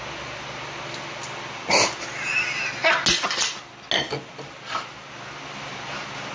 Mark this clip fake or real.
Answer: real